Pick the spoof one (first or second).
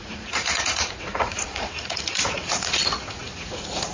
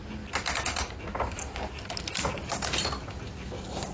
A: first